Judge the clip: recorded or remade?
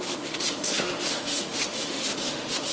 remade